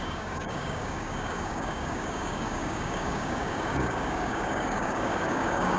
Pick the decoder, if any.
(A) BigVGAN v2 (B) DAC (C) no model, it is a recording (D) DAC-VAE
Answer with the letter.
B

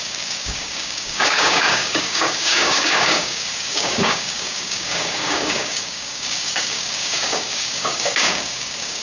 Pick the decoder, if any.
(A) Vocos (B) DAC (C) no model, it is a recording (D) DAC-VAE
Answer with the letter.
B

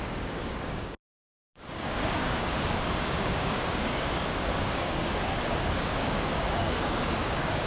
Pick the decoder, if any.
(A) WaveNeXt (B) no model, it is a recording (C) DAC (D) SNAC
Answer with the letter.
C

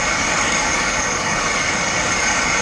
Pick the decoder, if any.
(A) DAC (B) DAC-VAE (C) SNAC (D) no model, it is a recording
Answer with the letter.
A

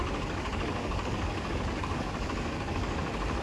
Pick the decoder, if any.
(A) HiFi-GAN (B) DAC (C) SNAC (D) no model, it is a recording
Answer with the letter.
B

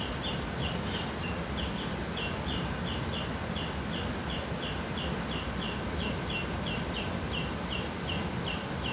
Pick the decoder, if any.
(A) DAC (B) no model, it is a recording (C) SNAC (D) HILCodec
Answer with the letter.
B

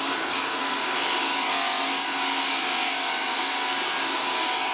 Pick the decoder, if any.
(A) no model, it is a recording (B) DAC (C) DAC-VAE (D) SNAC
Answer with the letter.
B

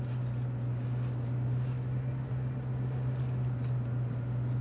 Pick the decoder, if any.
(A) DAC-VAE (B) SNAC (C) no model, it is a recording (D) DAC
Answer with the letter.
C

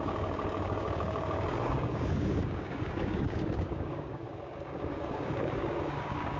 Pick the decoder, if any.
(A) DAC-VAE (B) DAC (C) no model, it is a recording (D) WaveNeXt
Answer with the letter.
B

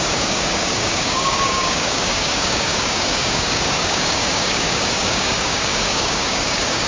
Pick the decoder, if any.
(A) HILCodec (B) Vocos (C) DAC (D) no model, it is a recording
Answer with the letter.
C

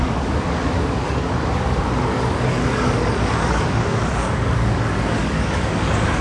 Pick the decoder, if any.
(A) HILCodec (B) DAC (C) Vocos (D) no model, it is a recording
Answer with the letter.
B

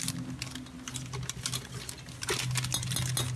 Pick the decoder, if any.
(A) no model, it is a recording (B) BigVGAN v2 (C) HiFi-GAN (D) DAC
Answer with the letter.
A